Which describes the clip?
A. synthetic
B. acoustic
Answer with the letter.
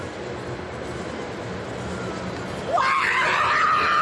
B